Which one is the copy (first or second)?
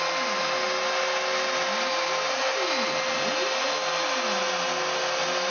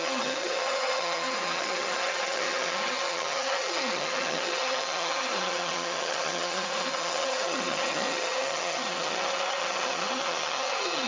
second